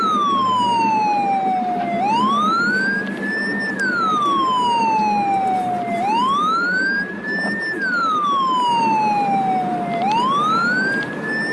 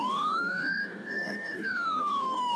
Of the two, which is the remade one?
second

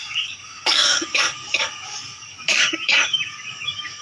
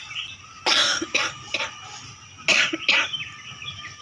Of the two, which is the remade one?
first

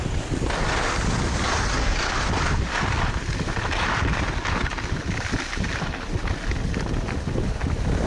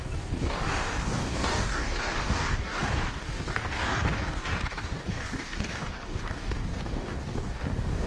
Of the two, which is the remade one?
second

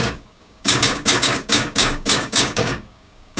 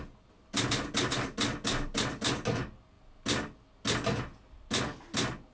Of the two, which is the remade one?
first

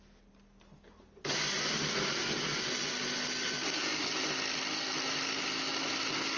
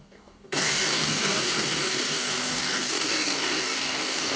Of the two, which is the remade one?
second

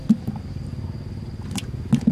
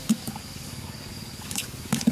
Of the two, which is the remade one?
second